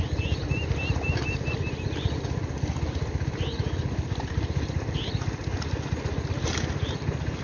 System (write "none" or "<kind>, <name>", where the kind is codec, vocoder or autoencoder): none